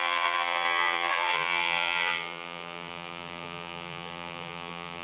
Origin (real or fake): fake